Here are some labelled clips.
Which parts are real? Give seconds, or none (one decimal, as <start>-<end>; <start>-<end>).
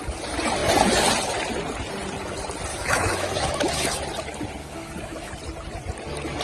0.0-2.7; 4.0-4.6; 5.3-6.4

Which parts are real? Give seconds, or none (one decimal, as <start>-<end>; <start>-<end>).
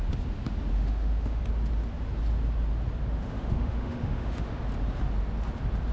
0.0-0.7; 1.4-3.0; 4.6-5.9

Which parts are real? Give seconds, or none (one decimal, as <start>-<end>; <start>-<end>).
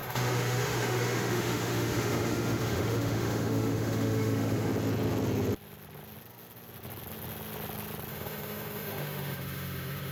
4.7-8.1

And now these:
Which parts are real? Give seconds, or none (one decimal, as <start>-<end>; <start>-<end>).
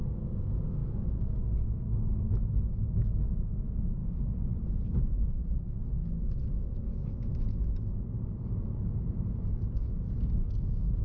0.0-0.8; 3.3-11.0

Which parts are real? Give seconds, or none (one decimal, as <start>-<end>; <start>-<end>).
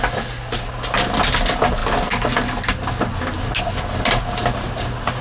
0.0-5.2